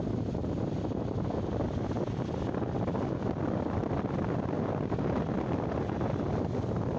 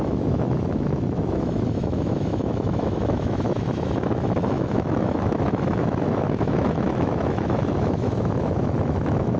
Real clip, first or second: first